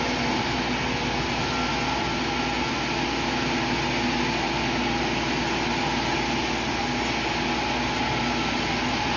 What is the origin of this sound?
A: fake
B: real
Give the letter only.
B